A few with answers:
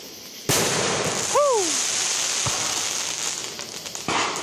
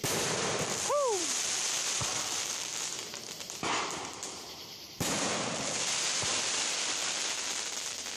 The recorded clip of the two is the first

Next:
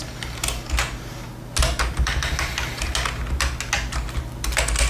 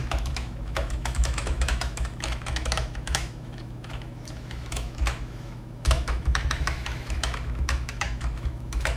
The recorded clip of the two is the first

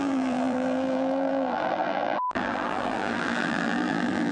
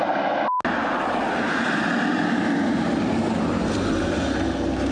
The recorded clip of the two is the second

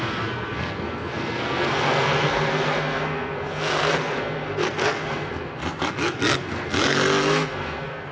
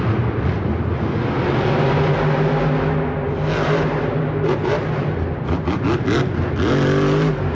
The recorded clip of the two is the second